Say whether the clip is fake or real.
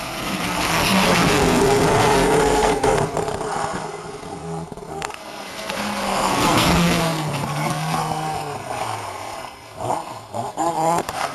fake